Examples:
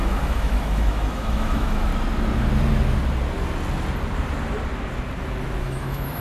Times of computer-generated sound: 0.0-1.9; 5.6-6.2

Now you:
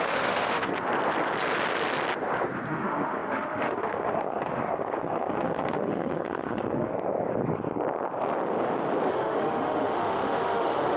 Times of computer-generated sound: 0.0-0.7; 2.7-6.9; 9.1-11.0